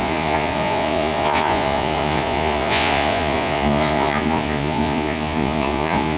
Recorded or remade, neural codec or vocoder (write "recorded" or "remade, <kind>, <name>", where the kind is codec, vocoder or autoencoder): remade, vocoder, Vocos